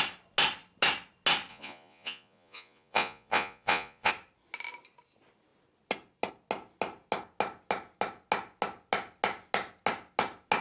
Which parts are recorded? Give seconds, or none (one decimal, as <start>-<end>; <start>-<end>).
0.0-1.5; 4.1-10.6